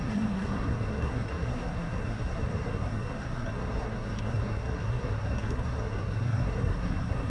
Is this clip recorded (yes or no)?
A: no